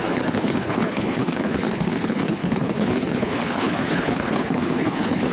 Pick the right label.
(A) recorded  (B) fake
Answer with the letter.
B